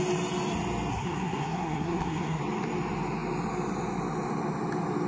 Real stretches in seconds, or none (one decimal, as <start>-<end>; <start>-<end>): 0.0-0.9; 2.4-5.1